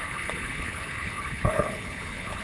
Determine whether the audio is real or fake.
fake